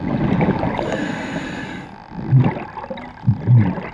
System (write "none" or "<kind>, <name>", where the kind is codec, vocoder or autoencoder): none